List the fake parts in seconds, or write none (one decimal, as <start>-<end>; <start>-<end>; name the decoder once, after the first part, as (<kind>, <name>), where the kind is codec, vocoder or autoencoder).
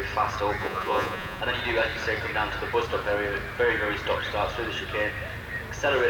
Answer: 0.6-1.4 (vocoder, Vocos)